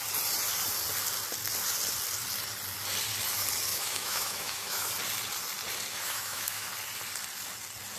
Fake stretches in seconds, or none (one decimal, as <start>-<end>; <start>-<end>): 3.7-4.9; 5.9-6.7